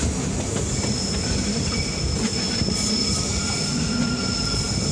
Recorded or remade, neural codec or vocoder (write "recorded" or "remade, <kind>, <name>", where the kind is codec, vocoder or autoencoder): recorded